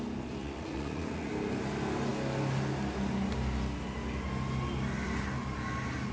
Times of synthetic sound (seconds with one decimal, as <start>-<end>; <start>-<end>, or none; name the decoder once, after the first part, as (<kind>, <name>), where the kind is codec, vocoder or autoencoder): 0.4-1.3 (vocoder, Vocos)